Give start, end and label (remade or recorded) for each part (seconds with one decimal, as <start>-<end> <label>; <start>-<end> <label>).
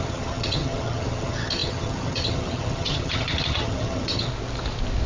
0.0-4.3 remade; 4.3-5.1 recorded